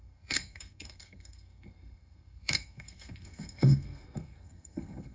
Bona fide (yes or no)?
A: no